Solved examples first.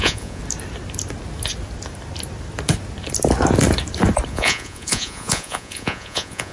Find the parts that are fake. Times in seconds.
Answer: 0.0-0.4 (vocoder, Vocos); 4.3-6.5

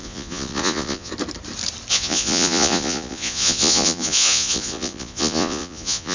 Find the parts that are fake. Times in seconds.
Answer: 0.0-1.1 (vocoder, Vocos); 1.9-6.1

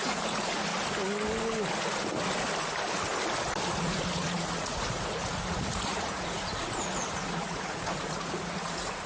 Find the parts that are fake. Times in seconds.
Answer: 0.0-0.7 (vocoder, Vocos); 3.7-9.1

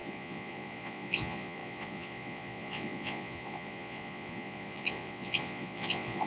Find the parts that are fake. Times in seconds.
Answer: 0.0-6.3 (vocoder, Vocos)